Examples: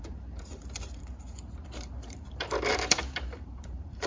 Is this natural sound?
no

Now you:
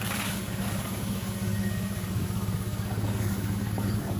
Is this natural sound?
no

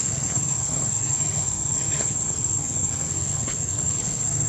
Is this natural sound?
no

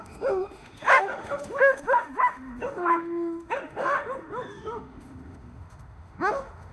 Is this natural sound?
no